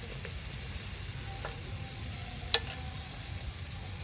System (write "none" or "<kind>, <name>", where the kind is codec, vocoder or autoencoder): none